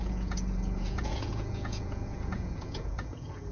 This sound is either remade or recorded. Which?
remade